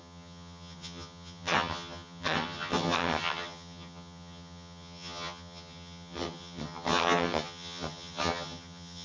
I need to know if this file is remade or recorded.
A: remade